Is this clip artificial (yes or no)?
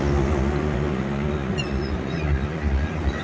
yes